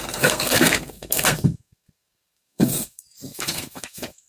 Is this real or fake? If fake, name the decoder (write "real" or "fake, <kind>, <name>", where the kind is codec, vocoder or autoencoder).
fake, codec, SNAC